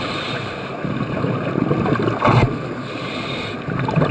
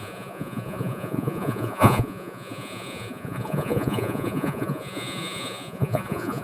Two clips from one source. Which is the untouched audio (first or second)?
first